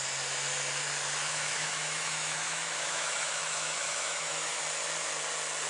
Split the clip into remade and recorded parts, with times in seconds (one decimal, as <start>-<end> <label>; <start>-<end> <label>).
0.0-1.2 recorded; 1.2-4.6 remade; 4.6-5.7 recorded